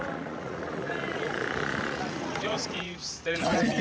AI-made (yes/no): yes